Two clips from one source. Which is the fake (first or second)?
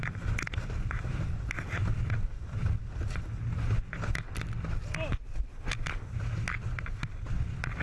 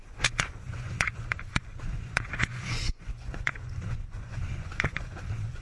second